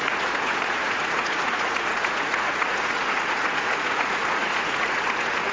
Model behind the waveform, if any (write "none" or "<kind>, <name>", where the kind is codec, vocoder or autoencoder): vocoder, Vocos